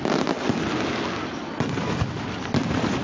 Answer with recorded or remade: recorded